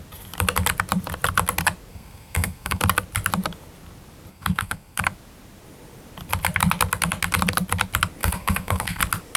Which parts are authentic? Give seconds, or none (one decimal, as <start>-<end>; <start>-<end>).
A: 0.0-1.9; 2.8-4.3; 5.0-8.2; 9.0-9.4